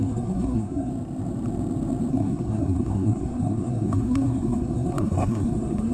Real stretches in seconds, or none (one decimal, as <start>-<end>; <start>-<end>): 0.9-2.1